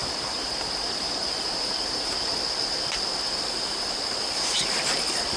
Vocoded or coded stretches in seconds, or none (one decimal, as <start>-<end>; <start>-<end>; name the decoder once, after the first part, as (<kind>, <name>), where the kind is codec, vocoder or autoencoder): 0.0-2.3 (vocoder, BigVGAN v2)